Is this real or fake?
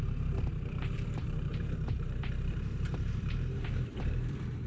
fake